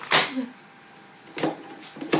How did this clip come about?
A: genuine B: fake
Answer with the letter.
A